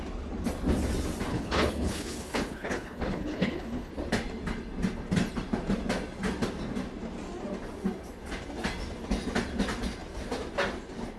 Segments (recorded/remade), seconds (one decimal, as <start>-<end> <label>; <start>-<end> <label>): 0.0-1.3 recorded; 1.3-3.9 remade; 3.9-11.2 recorded